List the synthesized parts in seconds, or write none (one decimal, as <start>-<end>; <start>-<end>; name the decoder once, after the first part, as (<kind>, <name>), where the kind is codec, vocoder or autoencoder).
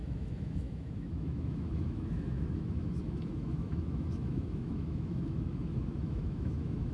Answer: 0.0-6.9 (autoencoder, DAC-VAE)